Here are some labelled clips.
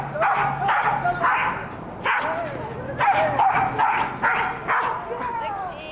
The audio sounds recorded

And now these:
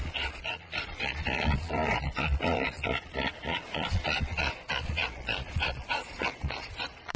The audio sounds remade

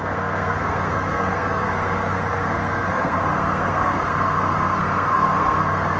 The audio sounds remade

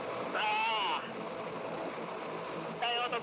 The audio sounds recorded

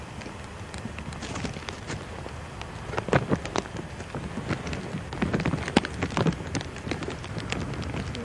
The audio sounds recorded